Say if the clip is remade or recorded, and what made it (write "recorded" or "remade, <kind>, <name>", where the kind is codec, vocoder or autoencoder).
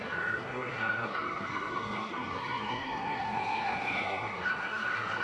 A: remade, codec, SNAC